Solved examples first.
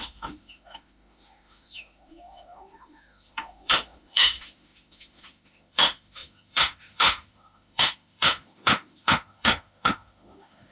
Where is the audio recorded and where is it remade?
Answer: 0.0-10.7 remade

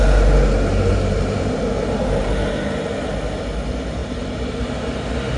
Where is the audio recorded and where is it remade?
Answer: 0.0-0.9 recorded; 0.9-3.0 remade; 3.0-4.0 recorded; 4.0-5.4 remade

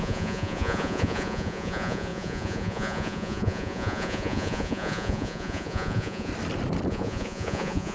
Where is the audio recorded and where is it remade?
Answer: 0.0-6.3 remade; 6.3-6.9 recorded; 6.9-7.9 remade

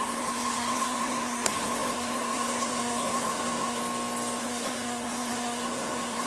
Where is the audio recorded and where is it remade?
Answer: 0.0-3.8 remade; 3.8-4.4 recorded; 4.4-6.3 remade

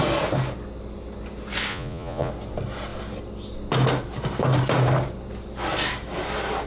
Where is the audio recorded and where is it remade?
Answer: 0.0-1.7 recorded; 1.7-2.3 remade; 2.3-6.7 recorded

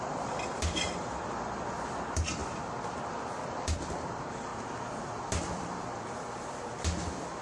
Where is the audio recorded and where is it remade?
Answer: 0.0-4.5 remade; 4.5-5.4 recorded; 5.4-7.4 remade